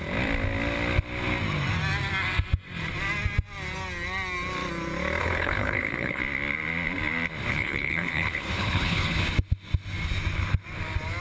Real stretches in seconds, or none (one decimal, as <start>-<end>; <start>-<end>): 0.0-5.2; 6.2-7.5; 9.2-11.2